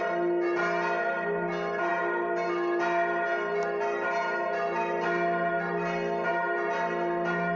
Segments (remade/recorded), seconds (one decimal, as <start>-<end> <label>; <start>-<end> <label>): 0.0-7.6 recorded